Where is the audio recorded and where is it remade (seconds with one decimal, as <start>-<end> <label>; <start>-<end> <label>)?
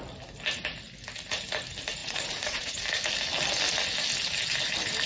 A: 0.0-2.0 recorded; 2.0-2.8 remade; 2.8-5.1 recorded